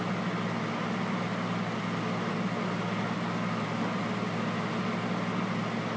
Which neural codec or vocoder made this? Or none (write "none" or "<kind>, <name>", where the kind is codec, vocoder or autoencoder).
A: none